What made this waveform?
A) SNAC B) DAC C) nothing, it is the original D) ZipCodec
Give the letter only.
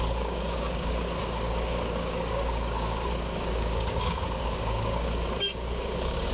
B